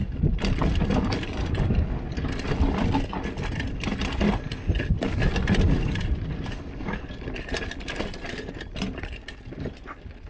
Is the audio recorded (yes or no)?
yes